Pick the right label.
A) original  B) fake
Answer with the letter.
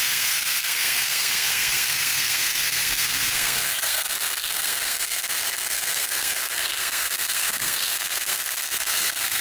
B